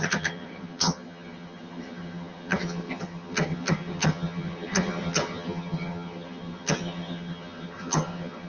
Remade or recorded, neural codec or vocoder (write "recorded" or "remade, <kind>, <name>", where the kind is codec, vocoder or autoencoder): remade, vocoder, HiFi-GAN